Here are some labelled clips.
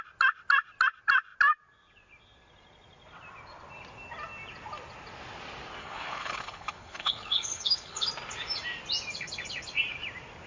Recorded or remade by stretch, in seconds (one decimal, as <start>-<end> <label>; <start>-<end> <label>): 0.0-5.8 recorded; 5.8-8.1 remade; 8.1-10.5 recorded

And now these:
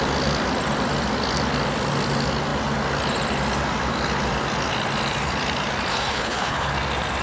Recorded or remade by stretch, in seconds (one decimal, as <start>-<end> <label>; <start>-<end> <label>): 0.0-5.9 recorded; 5.9-6.7 remade; 6.7-7.2 recorded

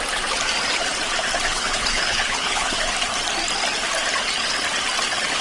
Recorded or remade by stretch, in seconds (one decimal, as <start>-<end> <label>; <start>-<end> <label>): 0.0-1.5 recorded; 1.5-2.8 remade; 2.8-5.4 recorded

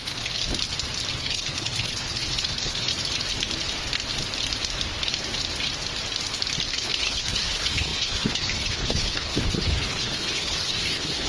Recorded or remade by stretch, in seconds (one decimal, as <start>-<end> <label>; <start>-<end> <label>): 0.0-0.4 remade; 0.4-1.2 recorded; 1.2-2.9 remade; 2.9-6.7 recorded; 6.7-11.3 remade